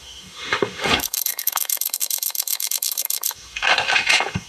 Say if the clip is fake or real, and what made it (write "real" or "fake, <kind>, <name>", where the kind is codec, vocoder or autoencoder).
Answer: fake, autoencoder, DAC-VAE